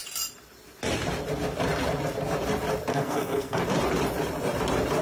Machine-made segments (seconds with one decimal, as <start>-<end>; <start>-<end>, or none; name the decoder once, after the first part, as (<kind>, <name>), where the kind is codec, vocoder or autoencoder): 2.9-3.6 (codec, SNAC)